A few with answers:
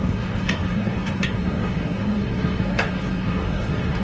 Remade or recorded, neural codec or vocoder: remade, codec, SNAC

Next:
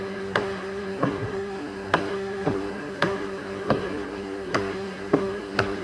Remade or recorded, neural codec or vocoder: remade, codec, SNAC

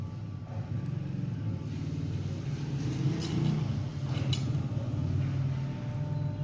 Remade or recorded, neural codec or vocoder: recorded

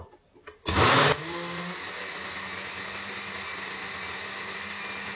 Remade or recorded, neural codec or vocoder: recorded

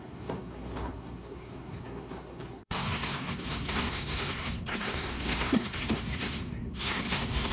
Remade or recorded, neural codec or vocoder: remade, codec, SNAC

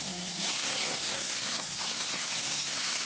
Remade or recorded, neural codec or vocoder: remade, codec, SNAC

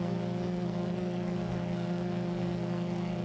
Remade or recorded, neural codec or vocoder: remade, codec, SNAC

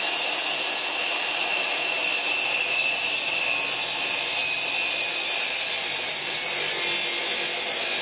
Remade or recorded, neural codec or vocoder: recorded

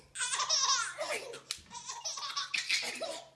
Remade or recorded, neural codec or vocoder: recorded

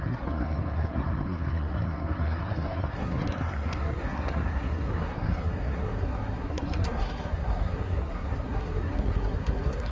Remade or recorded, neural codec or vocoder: remade, codec, SNAC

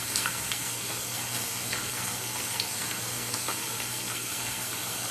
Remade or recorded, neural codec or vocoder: remade, codec, SNAC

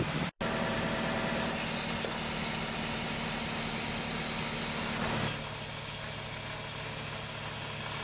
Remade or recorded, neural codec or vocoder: recorded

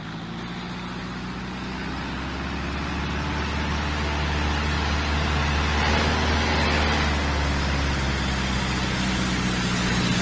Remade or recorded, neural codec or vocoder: recorded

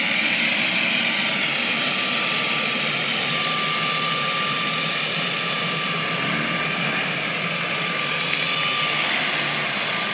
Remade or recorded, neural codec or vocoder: recorded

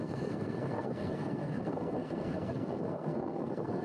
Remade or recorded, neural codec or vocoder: remade, codec, SNAC